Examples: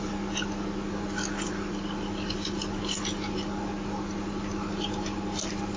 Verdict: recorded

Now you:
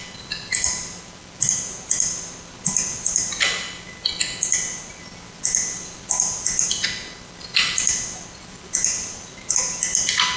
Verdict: recorded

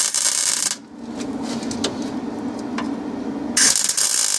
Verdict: recorded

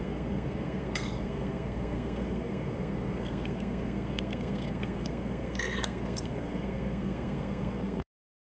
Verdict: remade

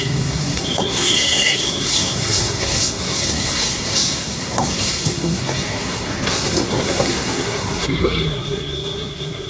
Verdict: remade